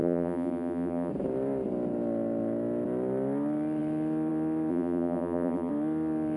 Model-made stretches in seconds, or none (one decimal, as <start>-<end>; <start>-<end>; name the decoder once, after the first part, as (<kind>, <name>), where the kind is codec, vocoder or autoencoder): 0.0-1.1 (vocoder, BigVGAN v2); 4.7-5.7